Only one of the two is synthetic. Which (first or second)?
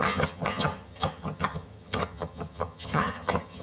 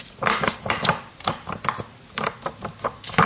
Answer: first